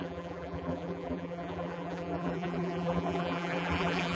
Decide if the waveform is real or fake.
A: fake